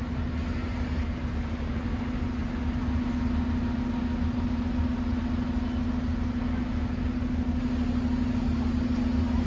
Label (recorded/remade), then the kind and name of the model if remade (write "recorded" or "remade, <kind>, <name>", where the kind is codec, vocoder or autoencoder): recorded